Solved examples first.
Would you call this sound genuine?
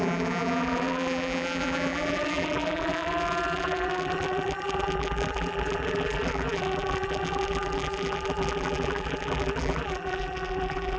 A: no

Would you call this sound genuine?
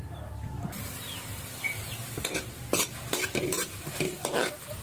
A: no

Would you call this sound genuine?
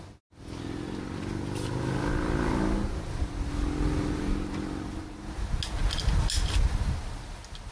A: yes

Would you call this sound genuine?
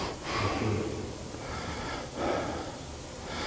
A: yes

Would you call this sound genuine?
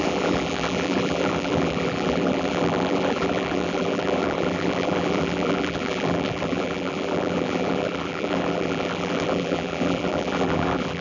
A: no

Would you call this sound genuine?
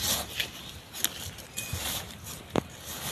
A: yes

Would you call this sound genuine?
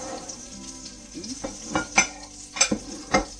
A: yes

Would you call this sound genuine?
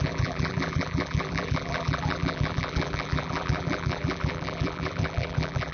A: no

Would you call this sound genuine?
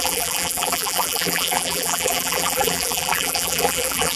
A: no